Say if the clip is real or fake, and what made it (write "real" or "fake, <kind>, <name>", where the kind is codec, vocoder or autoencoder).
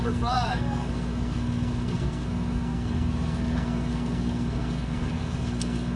fake, codec, SNAC